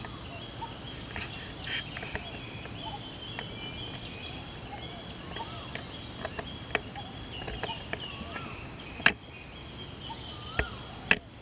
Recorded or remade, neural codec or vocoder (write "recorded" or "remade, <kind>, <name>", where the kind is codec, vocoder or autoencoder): recorded